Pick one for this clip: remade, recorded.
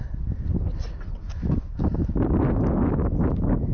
recorded